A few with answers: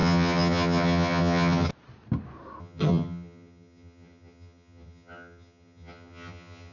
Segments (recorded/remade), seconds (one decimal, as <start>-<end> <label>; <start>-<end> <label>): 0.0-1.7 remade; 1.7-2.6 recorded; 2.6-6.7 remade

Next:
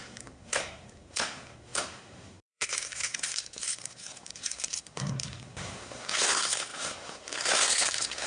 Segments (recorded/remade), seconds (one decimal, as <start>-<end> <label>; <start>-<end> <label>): 0.0-8.3 remade

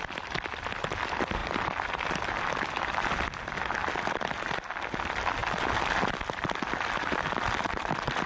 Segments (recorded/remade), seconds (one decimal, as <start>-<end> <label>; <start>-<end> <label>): 0.0-1.4 recorded; 1.4-3.2 remade; 3.2-8.3 recorded

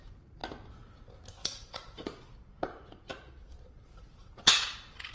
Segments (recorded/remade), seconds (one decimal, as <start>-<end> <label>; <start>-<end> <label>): 0.0-0.4 remade; 0.4-1.3 recorded; 1.3-5.1 remade

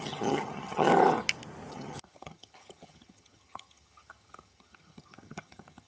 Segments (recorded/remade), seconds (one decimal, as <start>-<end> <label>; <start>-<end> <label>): 0.0-0.9 remade; 0.9-1.7 recorded; 1.7-5.9 remade

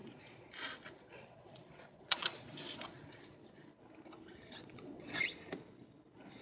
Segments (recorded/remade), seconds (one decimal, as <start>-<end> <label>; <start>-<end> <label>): 0.0-3.8 remade; 3.8-4.6 recorded; 4.6-5.2 remade; 5.2-6.4 recorded

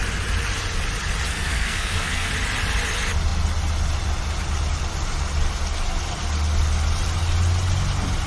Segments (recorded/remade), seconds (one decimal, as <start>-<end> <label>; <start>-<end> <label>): 0.0-1.3 recorded; 1.3-2.3 remade; 2.3-8.3 recorded

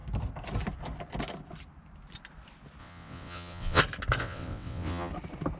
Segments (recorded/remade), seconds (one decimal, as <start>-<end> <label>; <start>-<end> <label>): 0.0-2.8 recorded; 2.8-3.8 remade; 3.8-4.2 recorded; 4.2-5.1 remade; 5.1-5.6 recorded